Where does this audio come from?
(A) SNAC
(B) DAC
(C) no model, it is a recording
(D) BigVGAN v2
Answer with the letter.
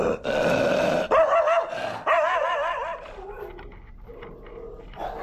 C